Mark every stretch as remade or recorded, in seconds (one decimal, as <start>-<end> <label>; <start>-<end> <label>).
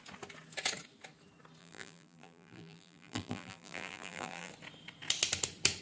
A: 0.0-1.6 recorded; 1.6-4.5 remade; 4.5-5.8 recorded